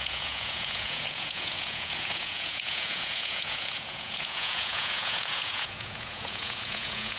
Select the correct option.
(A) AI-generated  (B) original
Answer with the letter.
A